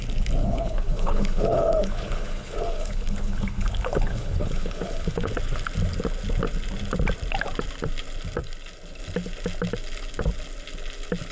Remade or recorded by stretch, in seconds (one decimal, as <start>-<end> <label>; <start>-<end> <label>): 0.0-0.4 recorded; 0.4-5.3 remade; 5.3-11.3 recorded

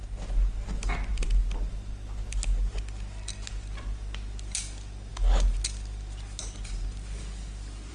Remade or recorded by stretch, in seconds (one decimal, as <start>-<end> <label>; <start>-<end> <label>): 0.0-7.9 recorded

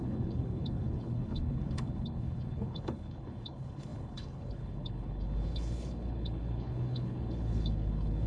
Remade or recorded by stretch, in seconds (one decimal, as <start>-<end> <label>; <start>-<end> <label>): 0.0-8.3 remade